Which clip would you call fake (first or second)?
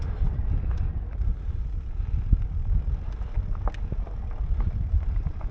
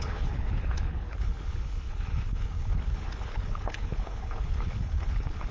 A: second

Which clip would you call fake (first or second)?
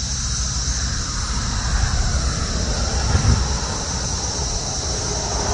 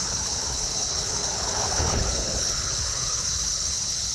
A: second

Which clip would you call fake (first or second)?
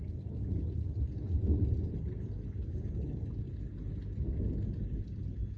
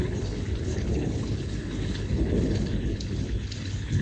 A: second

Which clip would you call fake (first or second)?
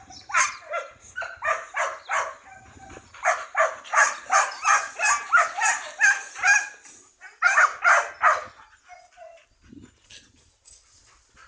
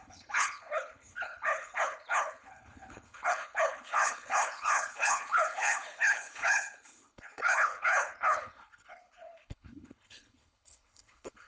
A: second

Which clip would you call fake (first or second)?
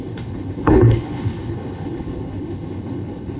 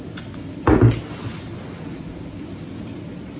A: first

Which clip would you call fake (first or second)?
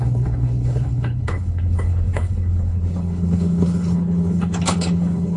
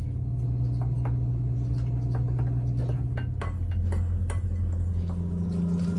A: first